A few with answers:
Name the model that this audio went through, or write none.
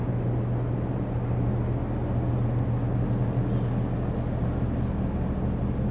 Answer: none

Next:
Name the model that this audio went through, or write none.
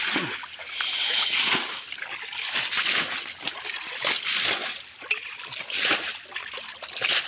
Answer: none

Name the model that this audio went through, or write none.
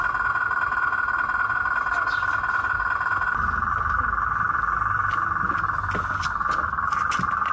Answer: none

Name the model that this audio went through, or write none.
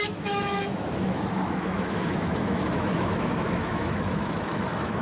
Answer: autoencoder, DAC-VAE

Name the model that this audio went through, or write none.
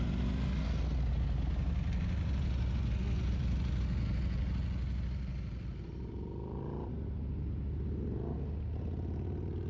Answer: none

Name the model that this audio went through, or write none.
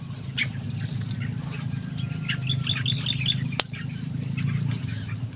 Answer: none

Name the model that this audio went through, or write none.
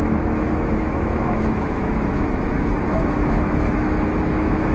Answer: autoencoder, DAC-VAE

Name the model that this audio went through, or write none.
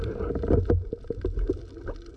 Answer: none